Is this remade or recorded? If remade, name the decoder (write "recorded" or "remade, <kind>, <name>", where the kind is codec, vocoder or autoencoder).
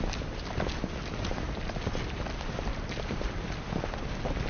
recorded